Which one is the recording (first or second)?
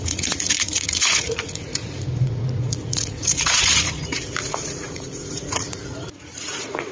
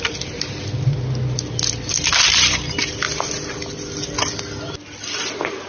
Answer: second